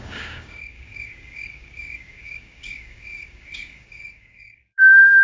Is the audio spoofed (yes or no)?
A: yes